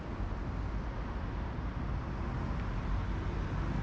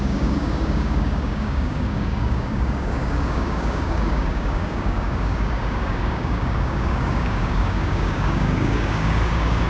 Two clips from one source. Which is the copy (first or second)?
second